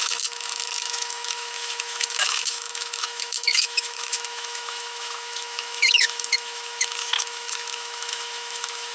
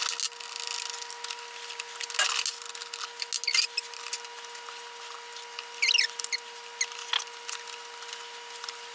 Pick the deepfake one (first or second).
first